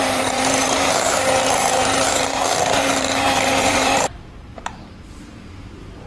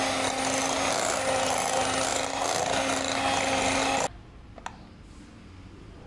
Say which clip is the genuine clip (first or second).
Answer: second